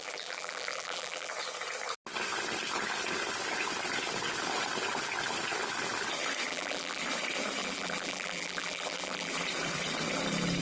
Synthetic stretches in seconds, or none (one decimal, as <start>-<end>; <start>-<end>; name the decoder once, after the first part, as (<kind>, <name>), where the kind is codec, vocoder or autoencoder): 0.0-1.3 (vocoder, BigVGAN v2); 6.5-7.0; 7.6-9.3